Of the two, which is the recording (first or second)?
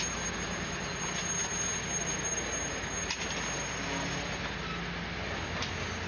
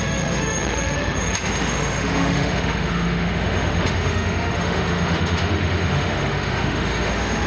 first